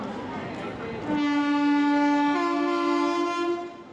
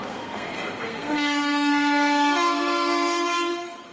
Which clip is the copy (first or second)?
second